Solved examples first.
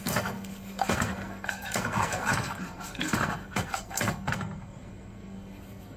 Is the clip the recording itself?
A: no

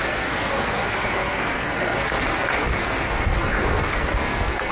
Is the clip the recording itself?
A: no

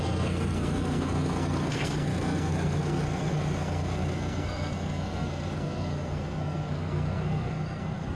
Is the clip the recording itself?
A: no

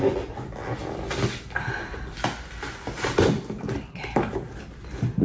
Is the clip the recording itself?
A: yes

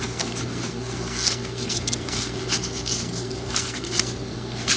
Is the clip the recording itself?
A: no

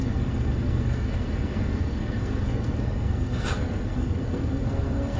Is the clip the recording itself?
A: no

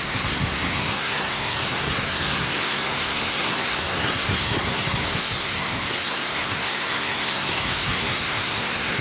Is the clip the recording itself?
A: no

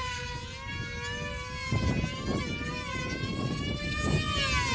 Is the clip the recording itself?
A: yes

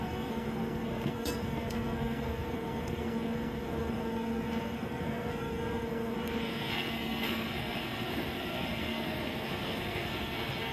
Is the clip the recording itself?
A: no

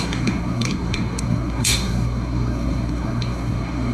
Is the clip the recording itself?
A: no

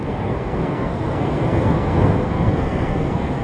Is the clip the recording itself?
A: no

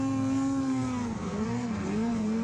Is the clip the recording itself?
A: no